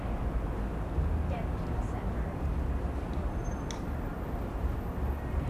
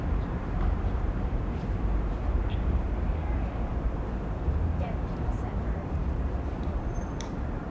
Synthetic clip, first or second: second